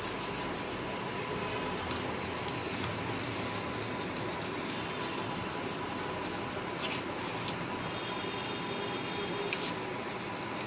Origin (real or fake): real